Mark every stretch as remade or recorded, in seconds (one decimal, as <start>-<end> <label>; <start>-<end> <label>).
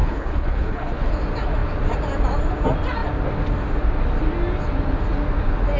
0.0-1.1 remade; 1.1-5.8 recorded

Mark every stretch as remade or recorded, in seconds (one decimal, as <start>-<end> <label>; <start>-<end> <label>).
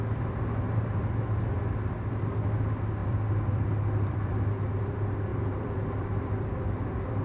0.0-3.0 recorded; 3.0-4.4 remade; 4.4-5.3 recorded; 5.3-7.2 remade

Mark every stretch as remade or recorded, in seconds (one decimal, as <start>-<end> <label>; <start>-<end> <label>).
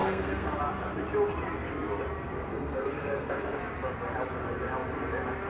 0.0-0.6 remade; 0.6-2.5 recorded; 2.5-3.6 remade; 3.6-5.5 recorded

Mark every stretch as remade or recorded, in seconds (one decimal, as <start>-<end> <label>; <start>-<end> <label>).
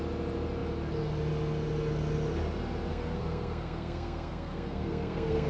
0.0-2.9 recorded; 2.9-5.5 remade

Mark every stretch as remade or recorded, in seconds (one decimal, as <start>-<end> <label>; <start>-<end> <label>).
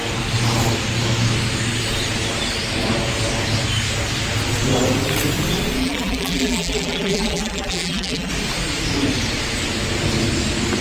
0.0-5.8 recorded; 5.8-8.3 remade; 8.3-10.8 recorded